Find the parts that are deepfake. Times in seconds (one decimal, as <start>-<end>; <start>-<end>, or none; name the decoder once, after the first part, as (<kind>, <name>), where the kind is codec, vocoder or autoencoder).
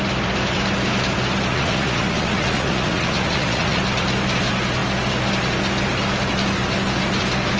1.5-3.8 (vocoder, Vocos)